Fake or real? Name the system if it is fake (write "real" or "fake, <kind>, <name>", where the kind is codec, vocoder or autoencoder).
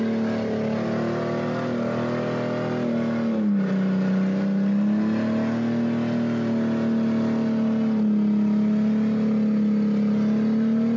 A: real